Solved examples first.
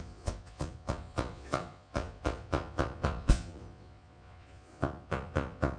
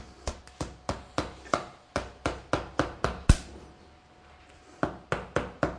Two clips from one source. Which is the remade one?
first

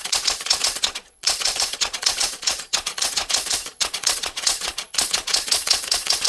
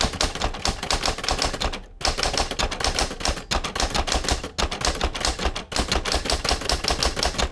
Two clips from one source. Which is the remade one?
first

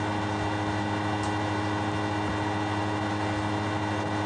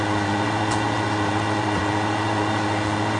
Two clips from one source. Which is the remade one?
second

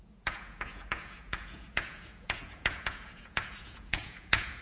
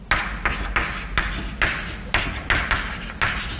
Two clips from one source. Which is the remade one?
first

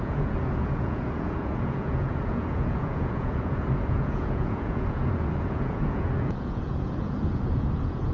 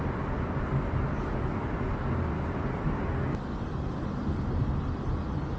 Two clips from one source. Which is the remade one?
first